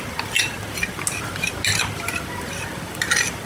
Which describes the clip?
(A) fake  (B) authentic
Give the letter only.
B